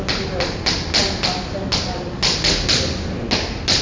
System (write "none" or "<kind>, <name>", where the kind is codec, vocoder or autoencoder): none